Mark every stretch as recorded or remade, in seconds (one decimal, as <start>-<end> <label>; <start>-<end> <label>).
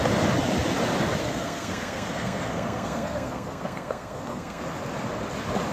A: 0.0-1.2 recorded; 1.2-4.6 remade; 4.6-5.7 recorded